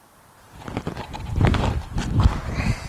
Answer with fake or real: fake